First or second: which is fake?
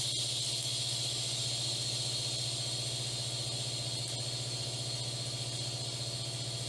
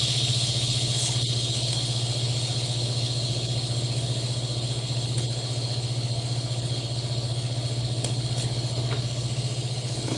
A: second